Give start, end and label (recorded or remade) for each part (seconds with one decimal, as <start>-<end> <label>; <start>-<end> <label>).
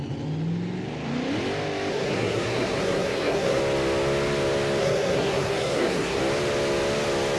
0.0-1.9 recorded; 1.9-3.6 remade; 3.6-4.8 recorded; 4.8-6.2 remade; 6.2-7.4 recorded